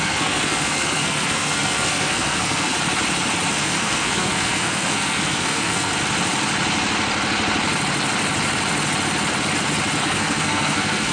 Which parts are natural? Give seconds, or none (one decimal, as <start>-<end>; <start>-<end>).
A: 2.7-3.5; 5.9-10.0